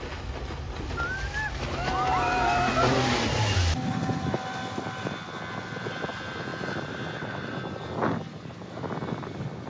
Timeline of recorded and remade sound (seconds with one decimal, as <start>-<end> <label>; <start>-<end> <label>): 0.0-9.7 recorded